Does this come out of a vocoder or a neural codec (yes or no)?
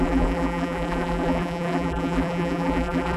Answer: yes